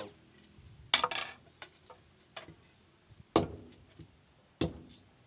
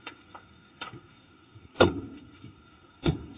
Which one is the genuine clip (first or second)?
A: first